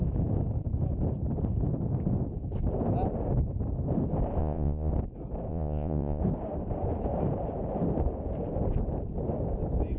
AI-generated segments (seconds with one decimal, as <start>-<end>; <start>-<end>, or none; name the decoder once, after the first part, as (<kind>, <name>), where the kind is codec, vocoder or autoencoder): 4.4-4.9 (vocoder, Vocos); 5.5-6.2